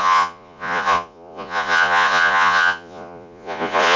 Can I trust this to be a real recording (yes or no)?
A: no